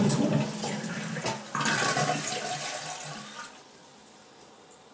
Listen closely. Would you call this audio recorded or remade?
recorded